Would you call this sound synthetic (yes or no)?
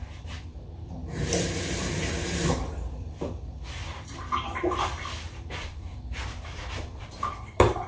yes